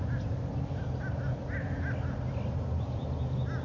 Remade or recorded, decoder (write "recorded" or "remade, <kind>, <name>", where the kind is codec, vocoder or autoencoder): recorded